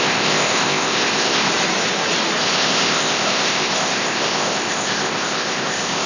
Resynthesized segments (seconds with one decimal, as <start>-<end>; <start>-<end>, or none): 0.0-1.5; 2.4-6.1